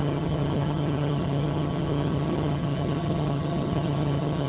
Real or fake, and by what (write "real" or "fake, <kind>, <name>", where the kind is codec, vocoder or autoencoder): fake, vocoder, HiFi-GAN